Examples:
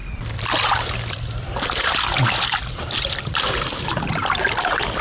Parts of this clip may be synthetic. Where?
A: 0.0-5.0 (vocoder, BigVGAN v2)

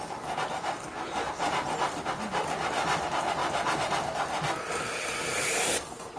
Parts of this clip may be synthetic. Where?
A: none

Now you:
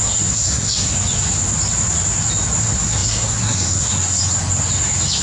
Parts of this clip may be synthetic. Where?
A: 0.0-0.9 (codec, SNAC); 2.6-4.2